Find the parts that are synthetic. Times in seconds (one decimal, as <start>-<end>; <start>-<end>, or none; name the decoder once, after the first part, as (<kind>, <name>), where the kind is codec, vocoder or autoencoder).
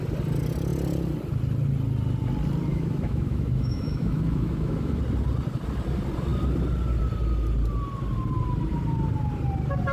2.7-5.0 (autoencoder, DAC-VAE)